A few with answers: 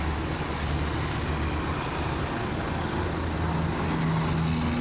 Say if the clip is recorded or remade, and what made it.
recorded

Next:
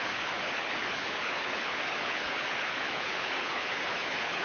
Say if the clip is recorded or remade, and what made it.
remade, codec, HILCodec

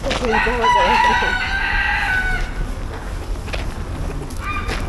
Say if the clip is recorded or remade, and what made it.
recorded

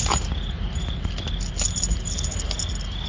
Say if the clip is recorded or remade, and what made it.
recorded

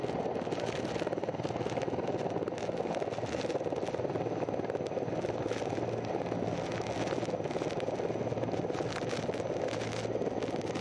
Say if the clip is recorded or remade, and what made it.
recorded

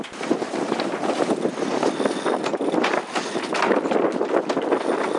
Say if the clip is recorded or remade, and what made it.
recorded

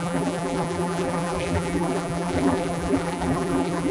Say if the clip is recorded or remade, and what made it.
remade, vocoder, BigVGAN v2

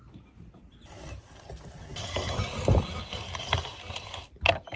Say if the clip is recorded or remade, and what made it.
recorded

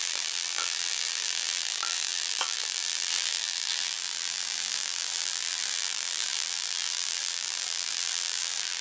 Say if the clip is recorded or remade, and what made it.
remade, vocoder, BigVGAN v2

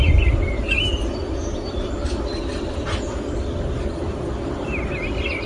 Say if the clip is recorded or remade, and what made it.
recorded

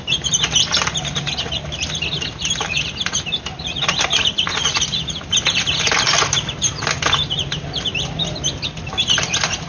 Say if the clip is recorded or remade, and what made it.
recorded